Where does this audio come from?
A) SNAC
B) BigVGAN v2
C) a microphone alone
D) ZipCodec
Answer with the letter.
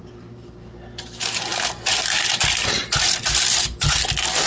C